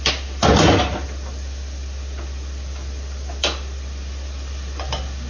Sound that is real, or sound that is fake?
real